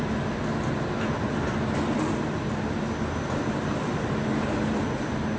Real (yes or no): yes